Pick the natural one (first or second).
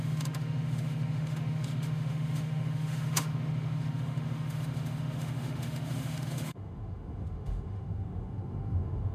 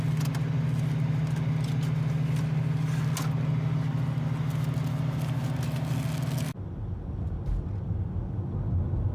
second